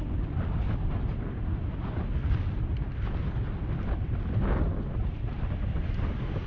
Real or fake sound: real